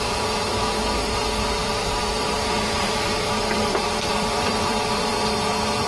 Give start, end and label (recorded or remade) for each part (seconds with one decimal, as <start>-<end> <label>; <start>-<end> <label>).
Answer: 0.0-1.6 recorded; 1.6-5.1 remade; 5.1-5.9 recorded